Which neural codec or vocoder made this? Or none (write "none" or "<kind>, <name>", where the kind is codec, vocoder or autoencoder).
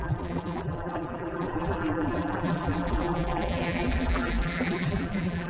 vocoder, BigVGAN v2